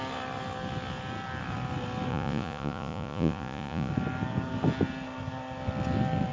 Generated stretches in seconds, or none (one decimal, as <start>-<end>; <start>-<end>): 2.1-3.9